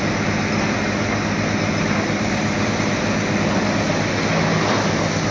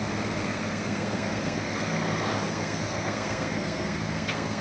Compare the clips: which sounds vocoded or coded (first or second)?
second